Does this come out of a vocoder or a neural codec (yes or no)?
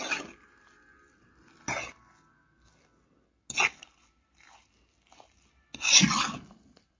no